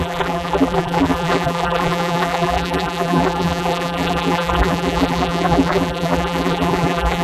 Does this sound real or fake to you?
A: fake